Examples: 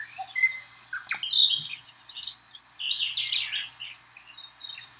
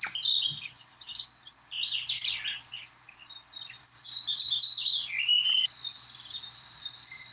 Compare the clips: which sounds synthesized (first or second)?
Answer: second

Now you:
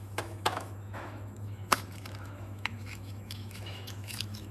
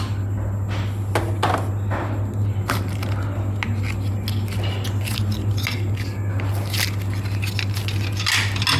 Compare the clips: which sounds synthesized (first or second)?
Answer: first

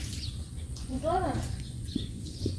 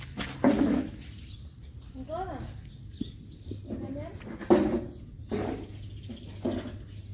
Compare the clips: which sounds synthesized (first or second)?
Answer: first